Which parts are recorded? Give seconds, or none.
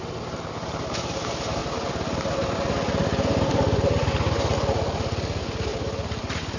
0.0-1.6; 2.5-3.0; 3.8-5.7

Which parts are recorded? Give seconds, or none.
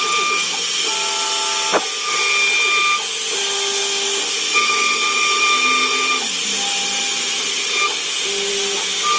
0.0-9.2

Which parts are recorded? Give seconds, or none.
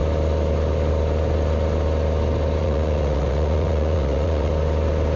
0.0-2.6; 4.5-5.2